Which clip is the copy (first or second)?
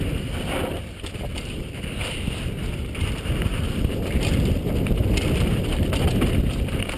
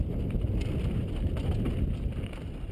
first